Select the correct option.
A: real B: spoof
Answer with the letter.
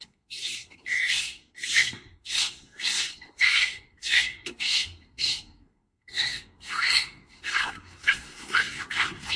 B